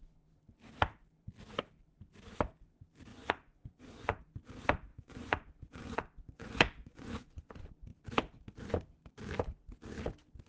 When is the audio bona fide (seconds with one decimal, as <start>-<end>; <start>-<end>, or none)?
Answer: 0.0-3.1; 4.2-4.9; 7.5-10.5